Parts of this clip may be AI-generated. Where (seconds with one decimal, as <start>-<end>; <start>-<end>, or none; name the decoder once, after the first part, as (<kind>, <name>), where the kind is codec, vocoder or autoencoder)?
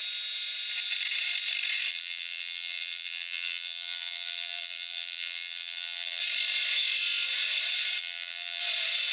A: 1.9-6.2 (vocoder, BigVGAN v2); 8.0-8.6